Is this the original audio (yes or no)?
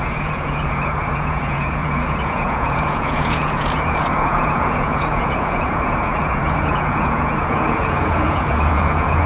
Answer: no